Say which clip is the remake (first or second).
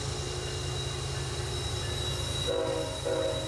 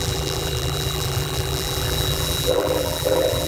second